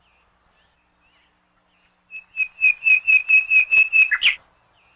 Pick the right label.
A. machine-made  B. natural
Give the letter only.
B